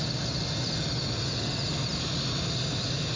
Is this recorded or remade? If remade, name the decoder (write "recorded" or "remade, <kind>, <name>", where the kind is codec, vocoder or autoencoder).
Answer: recorded